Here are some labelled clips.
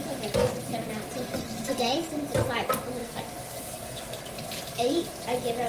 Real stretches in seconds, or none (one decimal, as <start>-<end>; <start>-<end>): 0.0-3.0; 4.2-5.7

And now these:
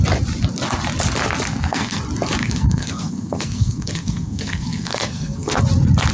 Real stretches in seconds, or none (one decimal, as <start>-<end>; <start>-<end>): 0.0-1.5; 2.0-2.4; 5.6-6.1

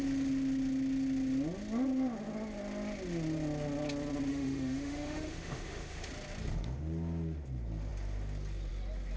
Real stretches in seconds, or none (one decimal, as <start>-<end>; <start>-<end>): 0.0-4.3; 6.1-9.2

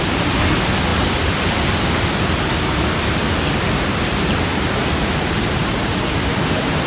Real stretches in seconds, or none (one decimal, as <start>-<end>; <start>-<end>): 0.0-4.5; 6.3-6.9

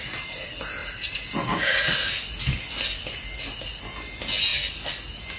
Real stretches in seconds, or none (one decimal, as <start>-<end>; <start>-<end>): 0.0-5.4

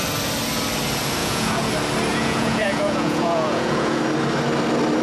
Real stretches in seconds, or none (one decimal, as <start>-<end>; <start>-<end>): 0.0-1.2; 1.7-2.1; 4.0-5.0